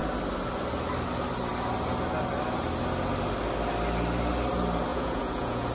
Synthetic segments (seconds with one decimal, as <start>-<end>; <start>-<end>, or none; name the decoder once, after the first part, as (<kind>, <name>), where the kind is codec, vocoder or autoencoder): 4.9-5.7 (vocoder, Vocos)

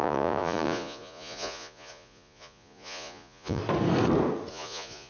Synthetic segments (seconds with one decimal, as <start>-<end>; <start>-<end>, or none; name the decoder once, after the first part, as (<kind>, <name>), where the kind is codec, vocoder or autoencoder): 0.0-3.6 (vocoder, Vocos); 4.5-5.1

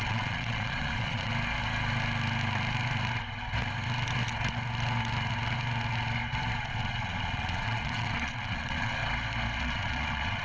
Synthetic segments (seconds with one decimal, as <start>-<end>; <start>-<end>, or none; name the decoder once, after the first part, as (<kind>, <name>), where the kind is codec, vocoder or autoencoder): 0.0-1.3 (vocoder, Vocos); 6.6-9.0; 9.6-10.4

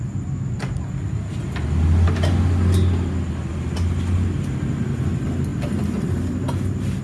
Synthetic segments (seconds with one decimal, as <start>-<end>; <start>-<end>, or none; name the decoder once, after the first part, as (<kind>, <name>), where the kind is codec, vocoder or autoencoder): none

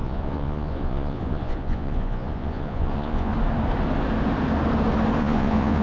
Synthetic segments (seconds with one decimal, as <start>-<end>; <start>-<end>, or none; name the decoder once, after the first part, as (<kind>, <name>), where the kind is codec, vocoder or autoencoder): 0.0-3.3 (vocoder, Vocos); 5.2-5.8

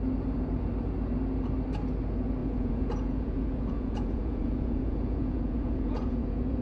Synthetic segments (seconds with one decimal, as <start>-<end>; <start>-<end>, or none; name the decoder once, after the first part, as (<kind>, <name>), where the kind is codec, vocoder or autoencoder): 2.4-6.6 (vocoder, Vocos)

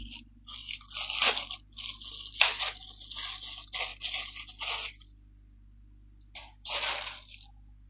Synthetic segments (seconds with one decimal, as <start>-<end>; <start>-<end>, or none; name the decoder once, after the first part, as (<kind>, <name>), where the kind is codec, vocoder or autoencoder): none